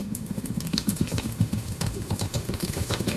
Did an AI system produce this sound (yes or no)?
yes